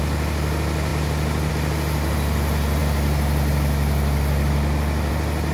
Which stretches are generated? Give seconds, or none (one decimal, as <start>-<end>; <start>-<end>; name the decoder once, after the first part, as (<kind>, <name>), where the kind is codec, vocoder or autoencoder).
none